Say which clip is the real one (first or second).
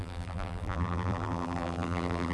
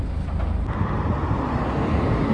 second